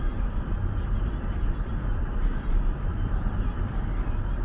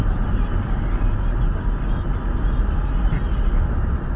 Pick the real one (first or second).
second